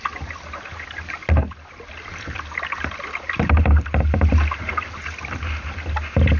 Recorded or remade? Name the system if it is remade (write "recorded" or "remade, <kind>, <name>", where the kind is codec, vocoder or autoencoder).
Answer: recorded